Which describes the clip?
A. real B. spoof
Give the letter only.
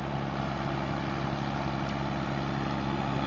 A